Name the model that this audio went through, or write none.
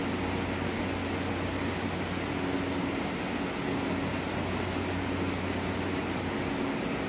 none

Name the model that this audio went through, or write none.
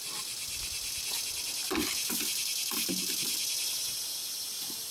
none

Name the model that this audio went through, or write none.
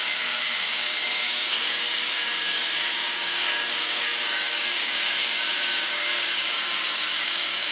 codec, DAC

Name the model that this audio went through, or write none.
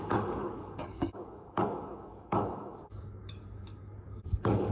codec, DAC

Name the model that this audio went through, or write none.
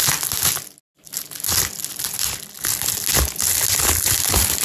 none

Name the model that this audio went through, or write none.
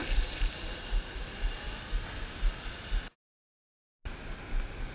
none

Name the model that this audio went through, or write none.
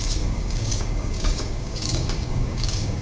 codec, DAC